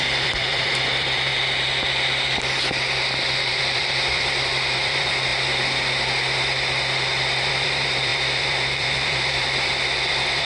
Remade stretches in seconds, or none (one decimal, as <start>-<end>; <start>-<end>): 0.0-1.3; 3.5-5.3; 7.5-10.4